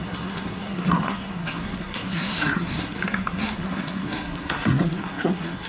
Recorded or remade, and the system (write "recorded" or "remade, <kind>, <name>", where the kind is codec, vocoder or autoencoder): remade, codec, SNAC